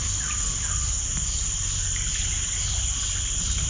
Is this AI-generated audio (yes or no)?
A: no